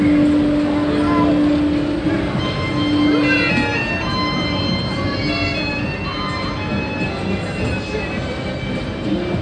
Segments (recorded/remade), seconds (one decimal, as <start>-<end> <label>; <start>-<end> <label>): 0.0-9.4 recorded